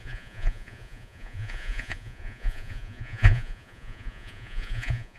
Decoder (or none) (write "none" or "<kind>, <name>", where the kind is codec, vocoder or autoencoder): vocoder, Vocos